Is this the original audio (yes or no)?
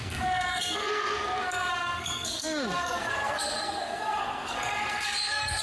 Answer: no